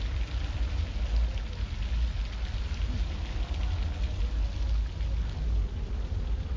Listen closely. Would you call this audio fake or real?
real